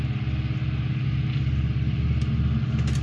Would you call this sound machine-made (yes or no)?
no